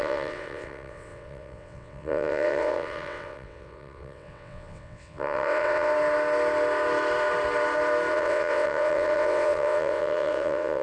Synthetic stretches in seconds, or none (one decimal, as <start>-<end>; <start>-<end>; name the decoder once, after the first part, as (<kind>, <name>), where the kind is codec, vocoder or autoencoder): 0.0-5.9 (vocoder, WaveNeXt); 8.1-10.8